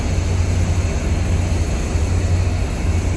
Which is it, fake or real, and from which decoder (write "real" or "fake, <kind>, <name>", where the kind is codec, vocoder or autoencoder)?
real